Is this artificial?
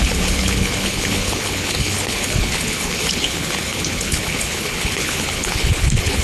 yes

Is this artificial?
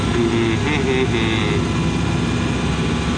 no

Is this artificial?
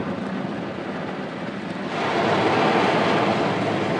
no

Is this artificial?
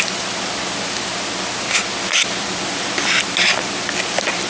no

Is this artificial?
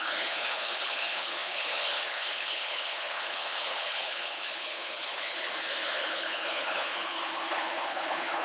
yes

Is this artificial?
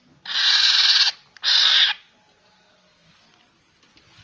no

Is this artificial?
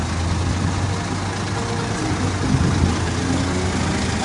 no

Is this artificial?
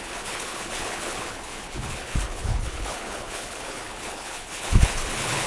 yes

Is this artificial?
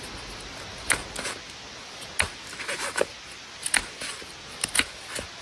no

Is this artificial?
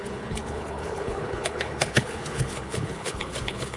yes